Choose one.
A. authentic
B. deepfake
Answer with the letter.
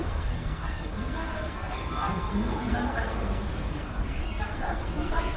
B